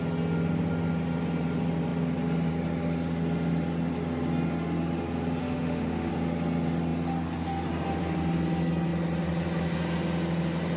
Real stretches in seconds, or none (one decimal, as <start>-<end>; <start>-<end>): 0.0-5.4; 6.1-10.8